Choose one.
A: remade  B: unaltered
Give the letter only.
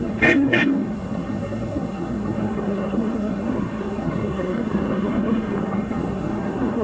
A